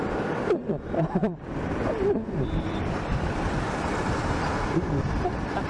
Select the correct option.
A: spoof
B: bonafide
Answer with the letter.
A